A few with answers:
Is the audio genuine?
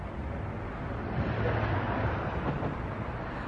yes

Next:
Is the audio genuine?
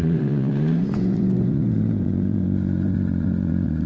no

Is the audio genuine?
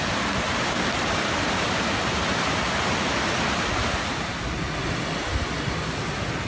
yes